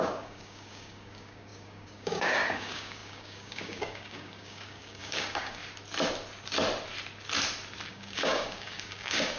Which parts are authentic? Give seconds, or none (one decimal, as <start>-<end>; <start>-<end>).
5.6-7.9